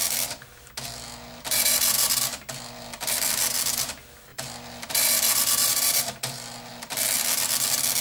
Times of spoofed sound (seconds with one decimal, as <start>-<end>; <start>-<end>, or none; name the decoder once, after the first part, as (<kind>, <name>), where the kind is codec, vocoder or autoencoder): 4.3-4.9 (vocoder, BigVGAN v2); 5.7-6.7